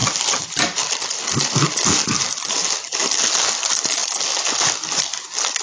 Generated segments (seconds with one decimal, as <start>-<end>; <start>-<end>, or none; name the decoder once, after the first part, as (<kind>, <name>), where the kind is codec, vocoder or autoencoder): none